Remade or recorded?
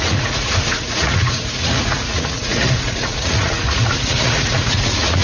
remade